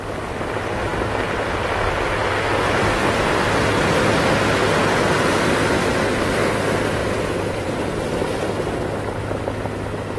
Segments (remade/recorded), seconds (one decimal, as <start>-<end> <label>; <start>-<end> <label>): 0.0-7.0 recorded; 7.0-7.8 remade; 7.8-10.2 recorded